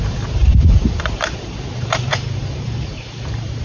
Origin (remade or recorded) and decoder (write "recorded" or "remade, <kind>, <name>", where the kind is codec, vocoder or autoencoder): remade, vocoder, BigVGAN v2